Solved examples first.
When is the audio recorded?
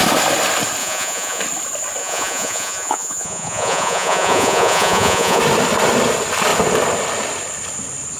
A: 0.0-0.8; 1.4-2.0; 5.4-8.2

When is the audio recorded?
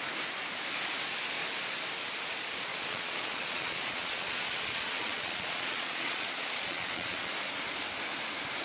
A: 0.0-2.7; 7.3-8.6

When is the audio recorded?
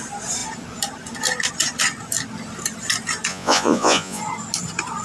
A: 0.0-3.3; 4.2-5.0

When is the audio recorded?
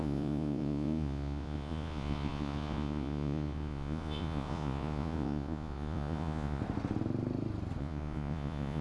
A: 6.6-7.8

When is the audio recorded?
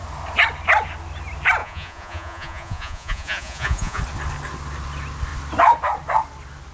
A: 0.0-1.6; 4.0-6.7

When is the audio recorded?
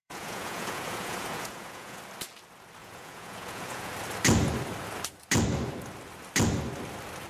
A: 2.0-2.8; 3.9-7.3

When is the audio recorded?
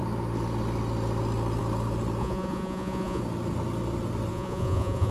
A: 0.0-2.2; 3.2-4.3